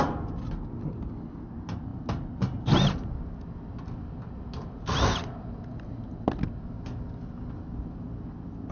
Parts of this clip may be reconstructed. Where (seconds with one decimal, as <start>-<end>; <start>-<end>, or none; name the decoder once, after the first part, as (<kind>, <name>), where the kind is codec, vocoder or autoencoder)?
none